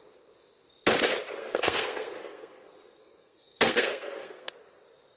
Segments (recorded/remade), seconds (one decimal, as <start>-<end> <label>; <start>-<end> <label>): 0.0-1.4 recorded; 1.4-4.5 remade; 4.5-5.2 recorded